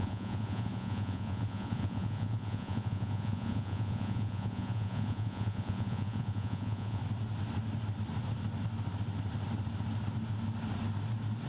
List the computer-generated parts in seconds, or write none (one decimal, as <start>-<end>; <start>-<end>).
0.0-7.0